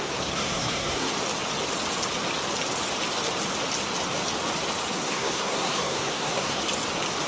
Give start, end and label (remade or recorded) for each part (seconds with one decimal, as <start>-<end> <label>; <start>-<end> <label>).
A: 0.0-1.1 remade; 1.1-4.9 recorded; 4.9-6.6 remade; 6.6-7.3 recorded